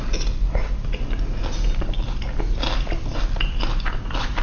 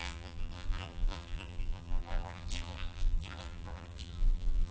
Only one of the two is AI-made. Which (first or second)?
second